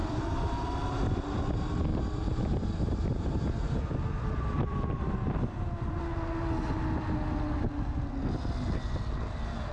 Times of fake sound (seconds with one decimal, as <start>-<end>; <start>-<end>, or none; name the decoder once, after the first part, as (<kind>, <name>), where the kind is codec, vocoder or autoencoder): 0.0-1.4 (vocoder, BigVGAN v2); 1.9-6.0